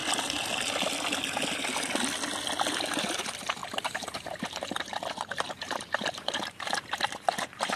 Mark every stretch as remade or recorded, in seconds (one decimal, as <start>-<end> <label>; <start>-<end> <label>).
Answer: 0.0-3.0 recorded; 3.0-7.8 remade